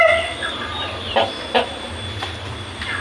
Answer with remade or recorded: recorded